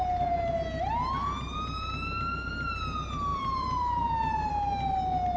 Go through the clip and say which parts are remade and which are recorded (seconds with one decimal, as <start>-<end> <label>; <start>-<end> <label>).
0.0-3.3 recorded; 3.3-4.5 remade; 4.5-5.4 recorded